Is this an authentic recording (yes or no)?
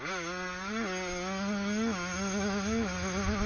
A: yes